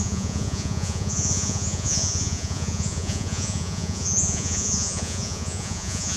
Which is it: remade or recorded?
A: remade